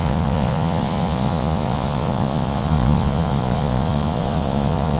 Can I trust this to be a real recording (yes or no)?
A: no